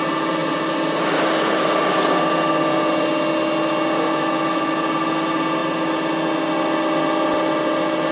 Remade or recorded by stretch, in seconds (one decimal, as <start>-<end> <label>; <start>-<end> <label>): 0.0-8.1 recorded

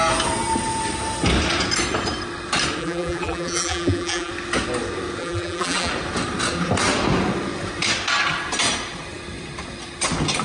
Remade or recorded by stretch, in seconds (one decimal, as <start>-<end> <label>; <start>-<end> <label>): 0.0-2.8 recorded; 2.8-4.3 remade; 4.3-5.2 recorded; 5.2-5.9 remade; 5.9-10.4 recorded

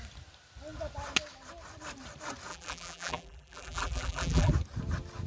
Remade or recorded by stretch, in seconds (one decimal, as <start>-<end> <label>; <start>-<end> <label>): 0.0-2.5 recorded; 2.5-4.5 remade; 4.5-5.3 recorded

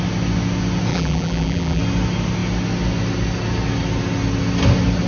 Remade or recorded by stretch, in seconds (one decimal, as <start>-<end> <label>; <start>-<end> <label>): 0.0-0.9 recorded; 0.9-1.8 remade; 1.8-5.1 recorded